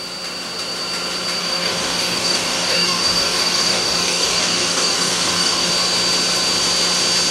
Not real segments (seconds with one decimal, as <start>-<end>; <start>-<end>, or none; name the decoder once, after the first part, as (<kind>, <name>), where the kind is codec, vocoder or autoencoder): 1.4-5.7 (codec, DAC)